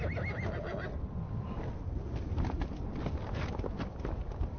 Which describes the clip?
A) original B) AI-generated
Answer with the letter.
A